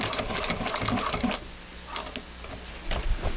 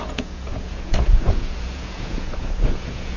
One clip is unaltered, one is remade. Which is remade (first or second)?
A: second